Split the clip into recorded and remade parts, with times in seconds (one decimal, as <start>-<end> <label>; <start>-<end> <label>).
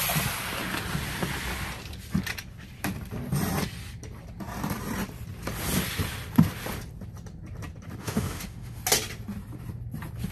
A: 0.0-8.0 recorded; 8.0-8.8 remade; 8.8-10.3 recorded